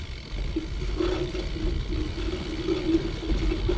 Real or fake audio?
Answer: real